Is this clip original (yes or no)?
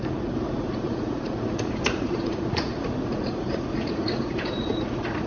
no